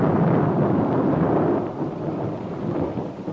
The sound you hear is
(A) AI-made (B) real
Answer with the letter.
B